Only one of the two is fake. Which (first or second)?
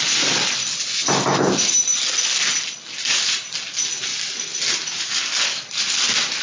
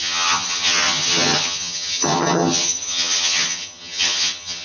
second